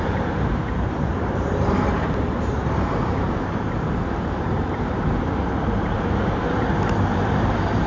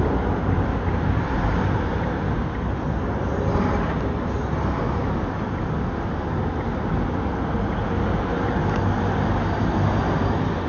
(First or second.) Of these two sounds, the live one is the second